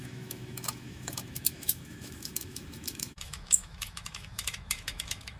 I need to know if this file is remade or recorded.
remade